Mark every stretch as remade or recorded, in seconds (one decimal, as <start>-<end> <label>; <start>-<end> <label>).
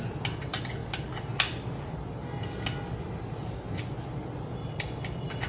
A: 0.0-5.5 recorded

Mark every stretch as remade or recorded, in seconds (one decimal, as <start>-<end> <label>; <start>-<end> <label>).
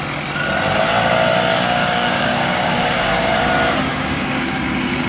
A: 0.0-1.5 recorded; 1.5-3.4 remade; 3.4-3.9 recorded; 3.9-4.6 remade; 4.6-5.1 recorded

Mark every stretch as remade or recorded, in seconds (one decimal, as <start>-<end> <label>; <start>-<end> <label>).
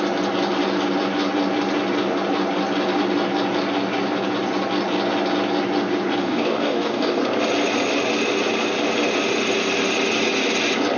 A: 0.0-6.2 recorded; 6.2-7.2 remade; 7.2-11.0 recorded